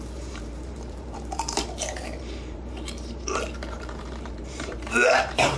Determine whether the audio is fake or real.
fake